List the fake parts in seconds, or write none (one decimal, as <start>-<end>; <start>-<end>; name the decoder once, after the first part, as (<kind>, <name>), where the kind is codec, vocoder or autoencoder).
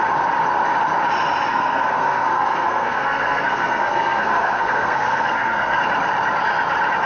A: 1.5-5.8 (codec, SNAC)